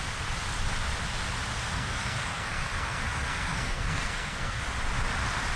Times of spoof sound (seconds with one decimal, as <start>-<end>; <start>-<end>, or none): 1.6-4.6